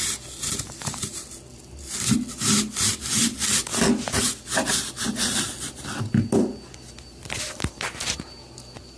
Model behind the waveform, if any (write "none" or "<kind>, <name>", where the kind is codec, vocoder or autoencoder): none